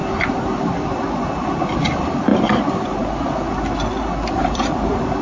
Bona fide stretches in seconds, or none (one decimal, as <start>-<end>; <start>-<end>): 2.3-4.4